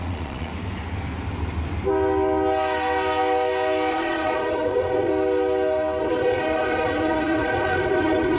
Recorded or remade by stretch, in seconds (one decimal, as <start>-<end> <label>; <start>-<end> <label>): 0.0-0.5 remade; 0.5-3.9 recorded; 3.9-5.1 remade; 5.1-6.0 recorded; 6.0-8.4 remade